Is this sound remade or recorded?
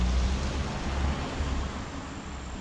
recorded